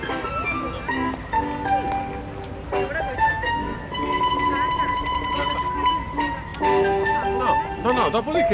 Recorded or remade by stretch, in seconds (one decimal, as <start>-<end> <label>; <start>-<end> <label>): 0.0-3.3 recorded; 3.3-3.8 remade; 3.8-8.5 recorded